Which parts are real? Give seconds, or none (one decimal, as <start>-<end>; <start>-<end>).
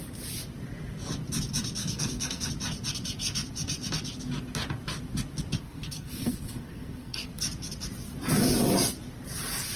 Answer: 0.0-1.8; 2.5-5.6; 7.3-9.8